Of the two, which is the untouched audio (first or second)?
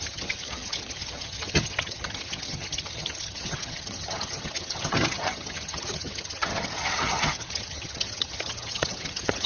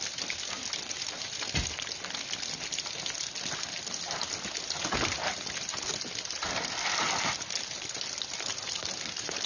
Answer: second